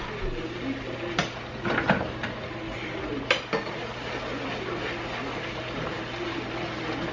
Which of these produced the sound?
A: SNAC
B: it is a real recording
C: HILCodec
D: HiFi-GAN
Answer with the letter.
B